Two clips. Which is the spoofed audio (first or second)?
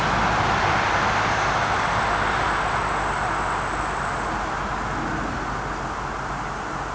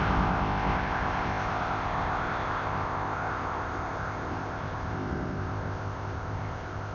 second